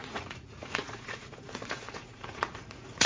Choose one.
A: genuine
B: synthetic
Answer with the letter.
B